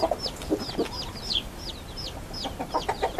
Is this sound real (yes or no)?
no